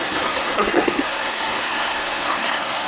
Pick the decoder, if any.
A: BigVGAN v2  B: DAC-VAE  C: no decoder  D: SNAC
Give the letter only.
D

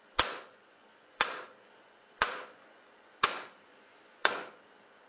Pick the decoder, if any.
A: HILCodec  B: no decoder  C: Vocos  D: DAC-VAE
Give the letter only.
C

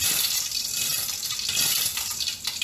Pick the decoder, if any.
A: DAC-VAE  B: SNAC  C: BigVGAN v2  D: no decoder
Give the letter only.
D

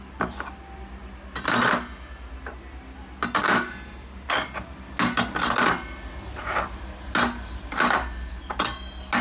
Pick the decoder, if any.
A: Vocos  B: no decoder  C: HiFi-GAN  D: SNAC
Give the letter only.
B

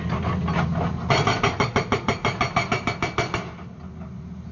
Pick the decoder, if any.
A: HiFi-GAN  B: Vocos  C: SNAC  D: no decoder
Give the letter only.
D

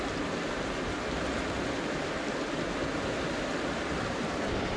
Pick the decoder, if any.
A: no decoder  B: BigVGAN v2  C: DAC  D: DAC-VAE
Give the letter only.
A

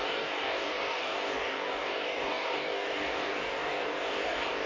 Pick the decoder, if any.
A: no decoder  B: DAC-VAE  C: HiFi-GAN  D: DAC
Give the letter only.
D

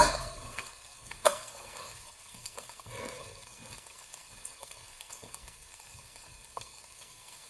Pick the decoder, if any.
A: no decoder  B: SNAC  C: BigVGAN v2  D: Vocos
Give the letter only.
B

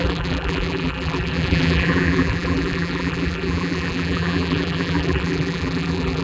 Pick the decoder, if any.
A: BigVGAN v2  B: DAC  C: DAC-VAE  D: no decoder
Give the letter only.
A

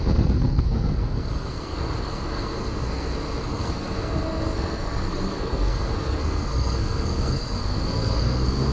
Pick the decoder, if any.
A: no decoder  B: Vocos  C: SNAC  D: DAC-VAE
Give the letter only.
C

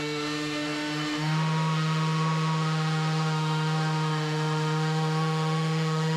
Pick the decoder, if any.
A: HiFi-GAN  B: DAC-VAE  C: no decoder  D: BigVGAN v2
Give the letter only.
B